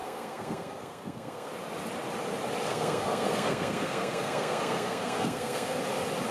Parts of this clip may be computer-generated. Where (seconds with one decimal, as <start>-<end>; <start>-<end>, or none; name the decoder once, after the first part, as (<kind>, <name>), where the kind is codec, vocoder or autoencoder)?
0.0-1.5 (codec, SNAC); 2.7-5.8